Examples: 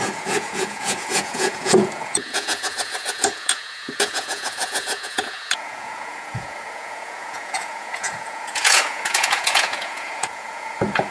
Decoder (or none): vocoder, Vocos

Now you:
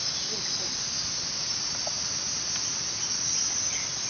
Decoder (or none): none